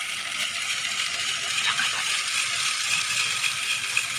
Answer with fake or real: fake